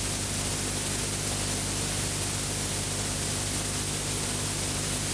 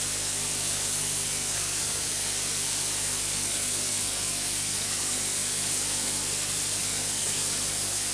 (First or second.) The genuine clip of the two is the first